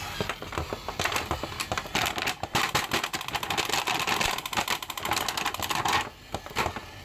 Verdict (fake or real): real